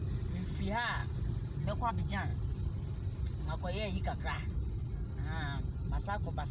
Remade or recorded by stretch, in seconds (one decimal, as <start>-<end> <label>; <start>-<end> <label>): 0.0-1.0 recorded; 1.0-1.9 remade; 1.9-2.3 recorded; 2.3-2.8 remade; 2.8-6.5 recorded